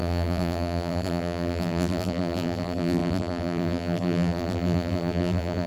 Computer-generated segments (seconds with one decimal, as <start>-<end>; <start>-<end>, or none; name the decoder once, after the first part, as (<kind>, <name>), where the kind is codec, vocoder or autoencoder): 0.0-5.7 (vocoder, BigVGAN v2)